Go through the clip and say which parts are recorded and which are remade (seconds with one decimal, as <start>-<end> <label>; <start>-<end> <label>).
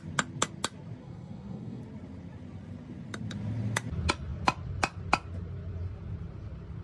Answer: 0.0-1.0 recorded; 1.0-1.8 remade; 1.8-6.8 recorded